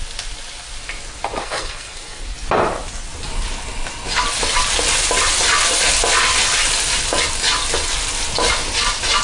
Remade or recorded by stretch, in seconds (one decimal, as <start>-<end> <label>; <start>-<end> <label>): 0.0-1.4 recorded; 1.4-2.2 remade; 2.2-9.2 recorded

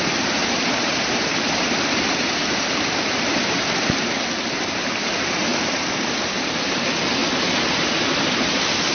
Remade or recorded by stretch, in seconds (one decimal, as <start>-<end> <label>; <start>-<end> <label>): 0.0-0.4 recorded; 0.4-4.0 remade; 4.0-5.5 recorded; 5.5-6.6 remade; 6.6-8.9 recorded

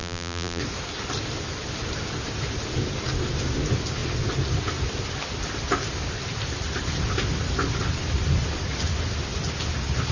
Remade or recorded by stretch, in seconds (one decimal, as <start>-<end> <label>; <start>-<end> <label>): 0.0-0.6 remade; 0.6-10.1 recorded

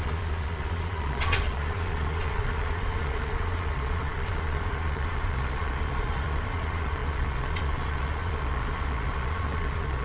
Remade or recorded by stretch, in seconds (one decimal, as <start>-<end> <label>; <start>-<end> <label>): 0.0-10.0 remade

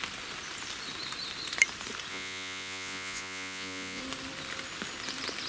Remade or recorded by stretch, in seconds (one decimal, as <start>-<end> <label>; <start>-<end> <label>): 0.0-2.1 recorded; 2.1-4.0 remade; 4.0-5.5 recorded

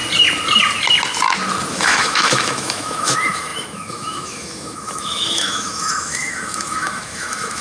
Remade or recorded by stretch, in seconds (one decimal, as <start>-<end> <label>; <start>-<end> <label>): 0.0-1.7 recorded; 1.7-7.6 remade